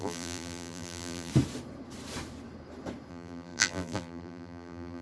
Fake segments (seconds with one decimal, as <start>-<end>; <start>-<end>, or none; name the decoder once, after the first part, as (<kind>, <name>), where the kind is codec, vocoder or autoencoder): 0.0-1.3 (vocoder, BigVGAN v2); 3.1-5.0